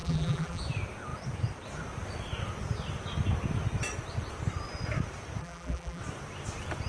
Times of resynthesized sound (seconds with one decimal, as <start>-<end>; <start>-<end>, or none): 0.0-0.6; 5.4-6.0